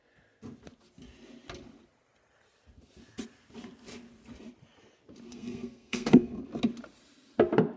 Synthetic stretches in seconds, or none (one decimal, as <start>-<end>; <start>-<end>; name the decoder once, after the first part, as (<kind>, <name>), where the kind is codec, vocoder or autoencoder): 5.3-6.4 (codec, SNAC)